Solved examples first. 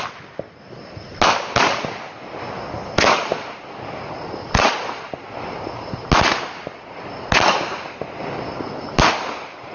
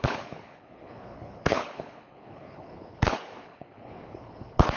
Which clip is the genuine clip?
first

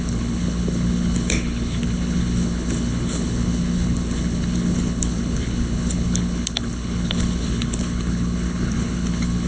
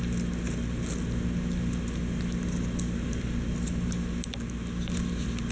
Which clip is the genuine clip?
second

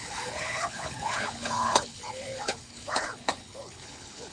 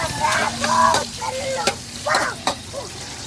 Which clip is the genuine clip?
second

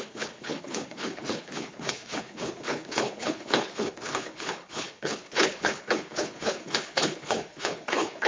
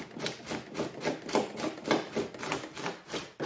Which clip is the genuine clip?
second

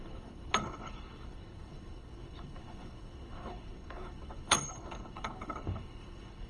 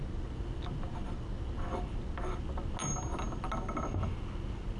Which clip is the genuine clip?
second